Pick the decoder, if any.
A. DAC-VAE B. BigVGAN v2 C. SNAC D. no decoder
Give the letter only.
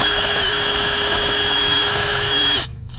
A